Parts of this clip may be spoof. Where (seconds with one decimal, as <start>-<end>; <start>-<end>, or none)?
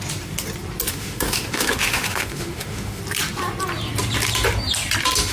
0.9-3.0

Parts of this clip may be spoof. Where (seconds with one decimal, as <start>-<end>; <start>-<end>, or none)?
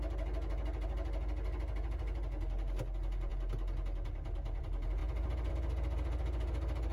none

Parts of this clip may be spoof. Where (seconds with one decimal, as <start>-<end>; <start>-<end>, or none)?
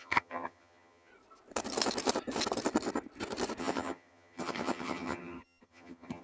0.0-1.1; 3.6-6.2